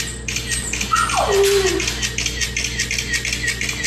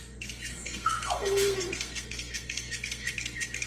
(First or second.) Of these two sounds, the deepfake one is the second